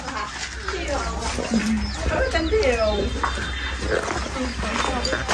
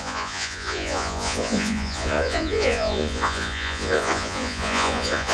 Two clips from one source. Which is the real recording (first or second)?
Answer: first